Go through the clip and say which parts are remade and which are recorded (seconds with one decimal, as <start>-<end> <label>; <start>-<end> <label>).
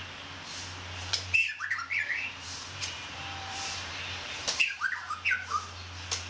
0.0-1.0 recorded; 1.0-4.8 remade; 4.8-6.3 recorded